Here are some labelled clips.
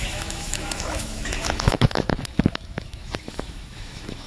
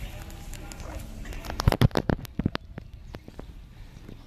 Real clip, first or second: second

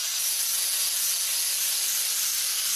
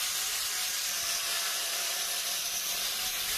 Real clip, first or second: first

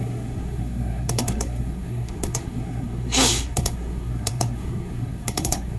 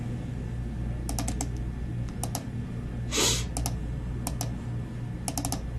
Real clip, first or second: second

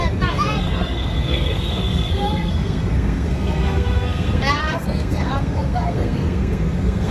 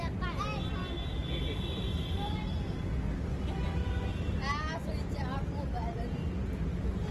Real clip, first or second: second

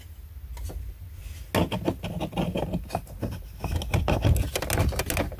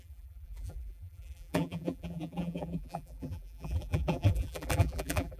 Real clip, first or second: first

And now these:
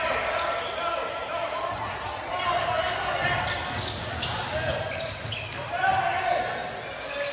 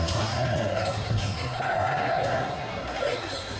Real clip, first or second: first